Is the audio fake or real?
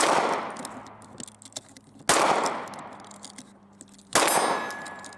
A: real